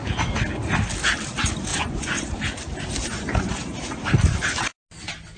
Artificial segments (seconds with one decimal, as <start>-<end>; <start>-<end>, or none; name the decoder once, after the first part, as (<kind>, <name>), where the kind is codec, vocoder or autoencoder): 1.7-2.3 (vocoder, Vocos); 3.0-3.5